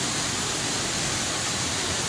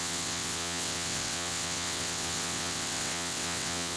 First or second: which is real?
first